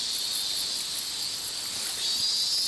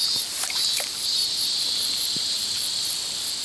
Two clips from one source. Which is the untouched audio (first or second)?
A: first